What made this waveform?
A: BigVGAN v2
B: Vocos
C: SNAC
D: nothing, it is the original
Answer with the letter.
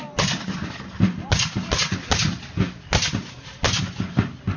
D